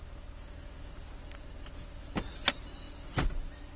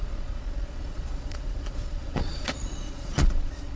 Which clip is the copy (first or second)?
second